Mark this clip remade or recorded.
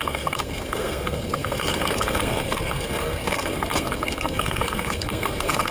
remade